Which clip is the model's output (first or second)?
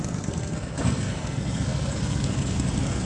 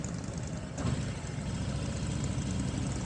first